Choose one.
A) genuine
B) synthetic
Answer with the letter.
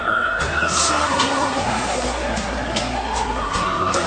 B